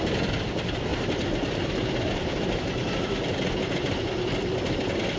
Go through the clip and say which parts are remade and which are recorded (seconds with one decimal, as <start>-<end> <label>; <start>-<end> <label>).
0.0-0.9 recorded; 0.9-3.5 remade; 3.5-5.2 recorded